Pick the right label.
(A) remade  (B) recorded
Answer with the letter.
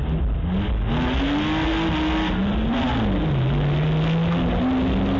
B